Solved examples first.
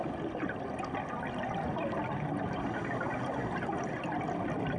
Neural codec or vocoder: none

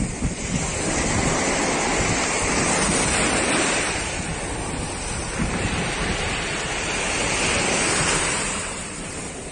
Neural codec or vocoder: none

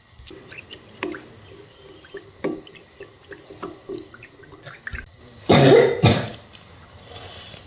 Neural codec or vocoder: none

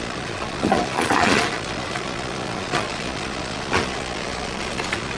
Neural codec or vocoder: vocoder, Vocos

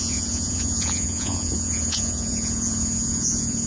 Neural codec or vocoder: vocoder, Vocos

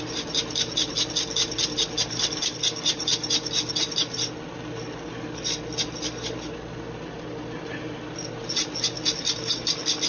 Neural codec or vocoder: none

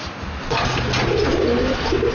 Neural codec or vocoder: none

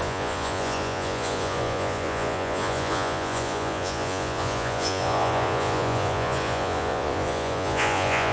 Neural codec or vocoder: vocoder, Vocos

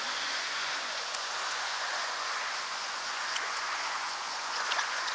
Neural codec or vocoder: vocoder, Vocos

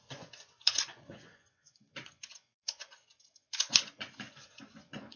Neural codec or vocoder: vocoder, Vocos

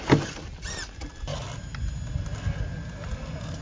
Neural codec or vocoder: none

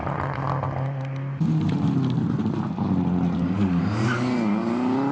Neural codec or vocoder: none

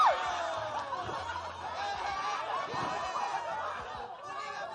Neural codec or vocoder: none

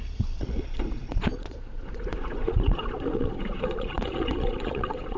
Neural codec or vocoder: vocoder, Vocos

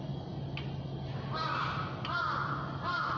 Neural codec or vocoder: none